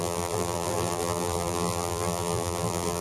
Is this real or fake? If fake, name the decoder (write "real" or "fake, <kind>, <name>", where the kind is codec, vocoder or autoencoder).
fake, vocoder, BigVGAN v2